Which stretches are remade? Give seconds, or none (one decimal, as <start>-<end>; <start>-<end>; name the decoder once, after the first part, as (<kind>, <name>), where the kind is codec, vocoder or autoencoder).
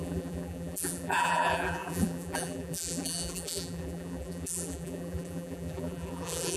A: 0.0-6.6 (vocoder, BigVGAN v2)